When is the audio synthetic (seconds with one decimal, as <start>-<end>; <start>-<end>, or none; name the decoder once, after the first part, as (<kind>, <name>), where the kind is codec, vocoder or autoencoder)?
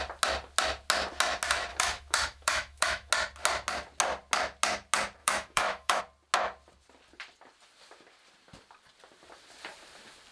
1.7-3.1 (autoencoder, DAC-VAE); 5.2-6.0